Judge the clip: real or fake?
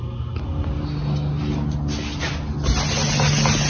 real